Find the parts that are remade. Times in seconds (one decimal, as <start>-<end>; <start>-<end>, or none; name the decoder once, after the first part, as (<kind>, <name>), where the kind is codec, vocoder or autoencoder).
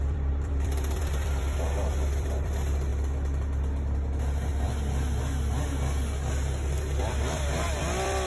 0.0-2.9 (vocoder, BigVGAN v2); 7.0-8.3